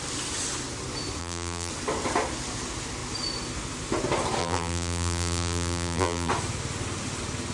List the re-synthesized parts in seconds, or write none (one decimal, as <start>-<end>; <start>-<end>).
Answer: 1.2-1.7; 4.4-6.3